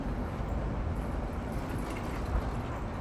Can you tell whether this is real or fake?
real